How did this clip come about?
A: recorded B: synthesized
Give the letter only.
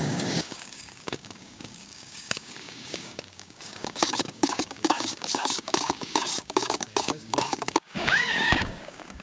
B